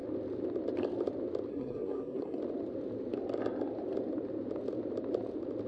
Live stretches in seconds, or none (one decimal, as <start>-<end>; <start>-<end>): 0.0-1.5; 2.4-5.7